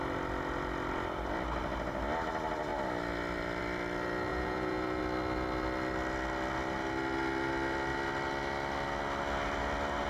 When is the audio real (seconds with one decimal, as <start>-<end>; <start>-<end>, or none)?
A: 0.0-4.3; 5.0-10.1